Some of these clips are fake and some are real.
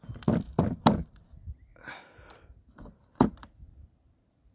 real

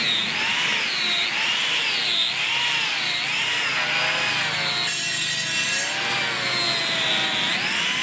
real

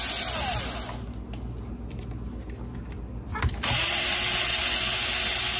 real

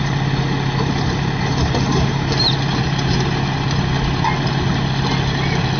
real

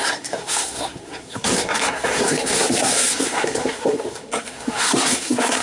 fake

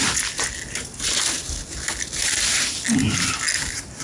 real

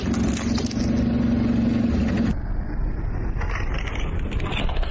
real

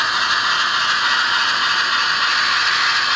real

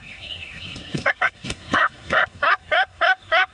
fake